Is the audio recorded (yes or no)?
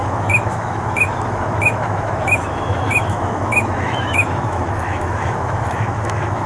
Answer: no